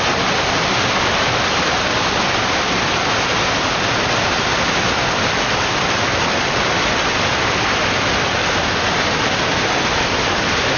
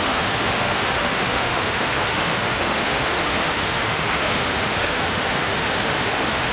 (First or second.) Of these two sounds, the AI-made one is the second